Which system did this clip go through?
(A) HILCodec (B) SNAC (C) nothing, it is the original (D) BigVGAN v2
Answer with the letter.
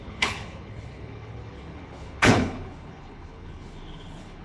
A